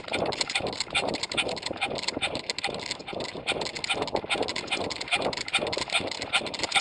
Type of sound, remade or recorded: recorded